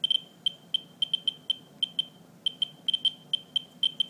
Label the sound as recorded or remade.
recorded